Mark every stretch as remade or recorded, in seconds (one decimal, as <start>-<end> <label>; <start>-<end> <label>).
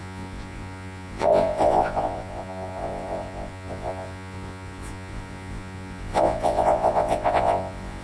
0.0-8.0 remade